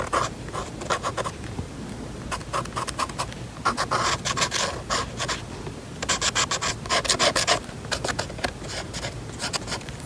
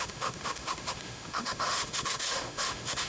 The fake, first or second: second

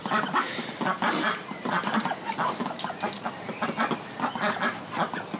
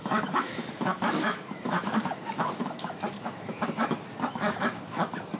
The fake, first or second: second